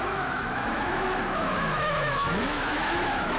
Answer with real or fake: fake